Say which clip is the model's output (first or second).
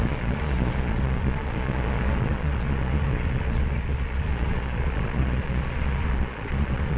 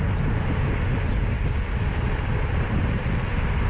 first